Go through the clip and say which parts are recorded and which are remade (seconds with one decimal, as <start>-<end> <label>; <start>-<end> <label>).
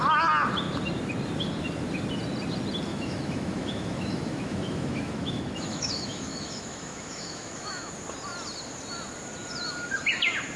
0.0-2.9 recorded; 2.9-7.9 remade; 7.9-10.6 recorded